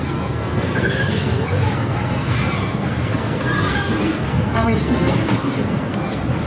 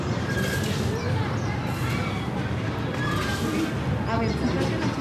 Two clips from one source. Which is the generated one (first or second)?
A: first